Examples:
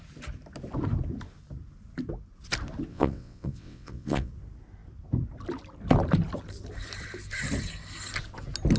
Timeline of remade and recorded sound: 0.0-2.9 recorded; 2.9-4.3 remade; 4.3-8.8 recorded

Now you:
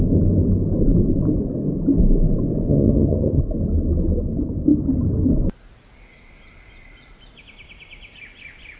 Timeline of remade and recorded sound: 0.0-2.7 recorded; 2.7-3.4 remade; 3.4-8.8 recorded

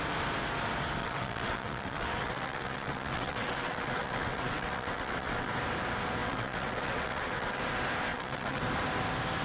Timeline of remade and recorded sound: 0.0-1.0 recorded; 1.0-5.5 remade; 5.5-6.2 recorded; 6.2-7.6 remade; 7.6-8.1 recorded; 8.1-8.6 remade; 8.6-9.4 recorded

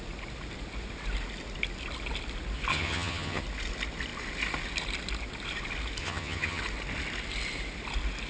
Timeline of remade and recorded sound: 0.0-2.7 recorded; 2.7-3.4 remade; 3.4-6.0 recorded; 6.0-6.6 remade; 6.6-8.3 recorded